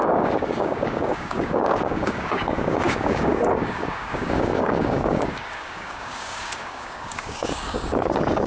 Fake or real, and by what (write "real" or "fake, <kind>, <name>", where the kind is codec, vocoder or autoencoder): fake, codec, DAC